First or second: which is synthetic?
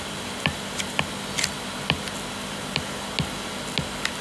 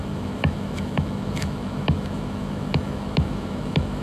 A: second